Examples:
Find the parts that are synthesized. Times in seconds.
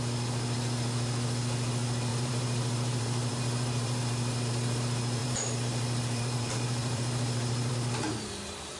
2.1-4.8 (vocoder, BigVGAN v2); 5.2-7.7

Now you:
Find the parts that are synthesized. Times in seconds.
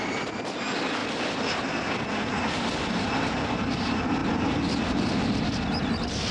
none